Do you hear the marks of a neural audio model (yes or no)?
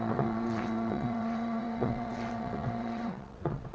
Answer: yes